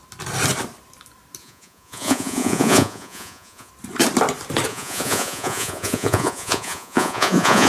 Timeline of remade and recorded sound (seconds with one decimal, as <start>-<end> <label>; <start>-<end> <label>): 0.0-1.4 recorded; 1.4-3.7 remade; 3.7-4.7 recorded; 4.7-7.7 remade